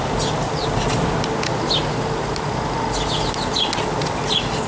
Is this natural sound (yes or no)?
yes